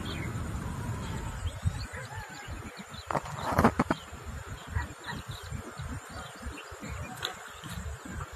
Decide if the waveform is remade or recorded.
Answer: recorded